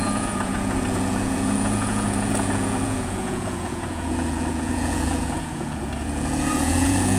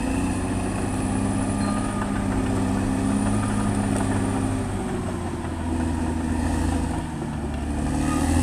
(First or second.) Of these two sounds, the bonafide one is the second